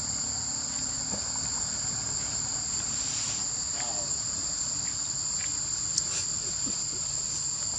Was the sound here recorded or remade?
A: recorded